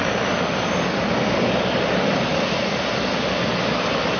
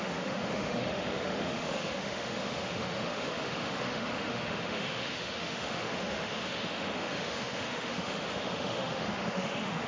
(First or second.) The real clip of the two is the first